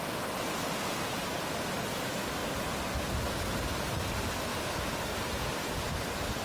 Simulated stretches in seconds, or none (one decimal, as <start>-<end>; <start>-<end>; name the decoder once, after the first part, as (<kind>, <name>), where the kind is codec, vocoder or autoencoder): 4.5-6.0 (vocoder, BigVGAN v2)